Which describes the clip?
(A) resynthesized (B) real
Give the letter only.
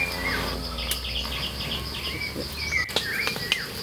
B